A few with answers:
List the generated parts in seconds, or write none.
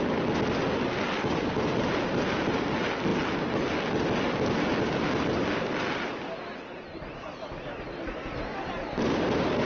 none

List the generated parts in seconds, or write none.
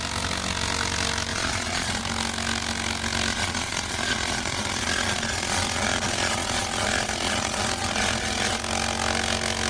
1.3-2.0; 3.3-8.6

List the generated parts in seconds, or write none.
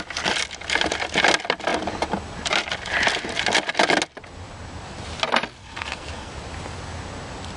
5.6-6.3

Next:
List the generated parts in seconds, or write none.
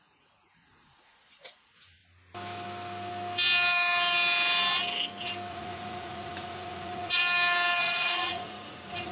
0.0-2.0; 5.5-7.2; 7.8-9.1